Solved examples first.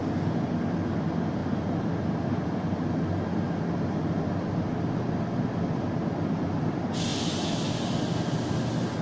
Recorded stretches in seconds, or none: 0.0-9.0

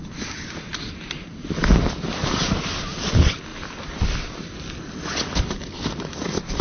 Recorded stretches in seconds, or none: 0.0-6.6

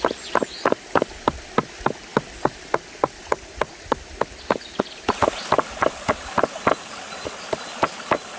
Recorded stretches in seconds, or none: 0.0-8.4

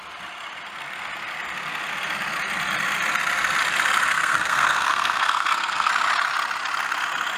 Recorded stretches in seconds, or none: 0.0-4.1; 5.9-7.4

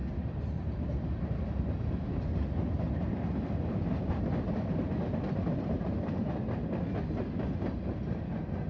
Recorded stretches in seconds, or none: 0.0-8.7